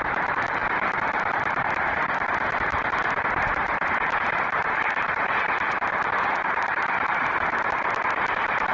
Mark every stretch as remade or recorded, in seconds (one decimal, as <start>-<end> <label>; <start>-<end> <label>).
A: 0.0-8.7 remade